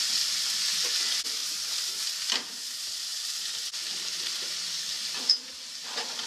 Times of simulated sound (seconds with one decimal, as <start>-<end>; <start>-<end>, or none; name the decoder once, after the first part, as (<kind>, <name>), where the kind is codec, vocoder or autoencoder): 1.4-2.0 (vocoder, BigVGAN v2); 3.1-5.5